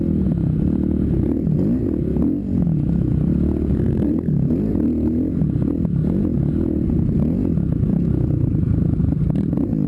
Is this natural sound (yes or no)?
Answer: yes